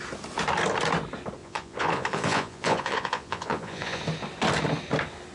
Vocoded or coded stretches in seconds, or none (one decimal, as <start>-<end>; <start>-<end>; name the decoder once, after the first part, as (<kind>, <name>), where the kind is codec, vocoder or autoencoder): 1.4-4.0 (vocoder, Vocos)